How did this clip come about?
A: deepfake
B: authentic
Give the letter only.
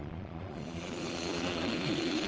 A